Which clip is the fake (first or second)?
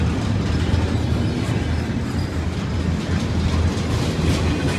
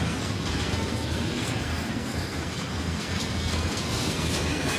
second